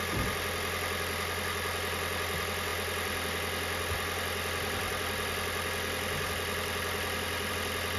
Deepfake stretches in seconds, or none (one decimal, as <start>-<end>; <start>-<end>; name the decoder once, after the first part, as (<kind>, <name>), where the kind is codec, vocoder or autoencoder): none